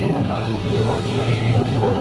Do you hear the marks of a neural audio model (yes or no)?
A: yes